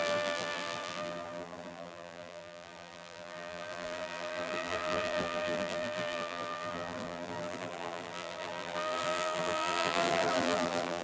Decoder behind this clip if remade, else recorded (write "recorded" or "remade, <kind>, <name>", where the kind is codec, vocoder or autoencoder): remade, vocoder, BigVGAN v2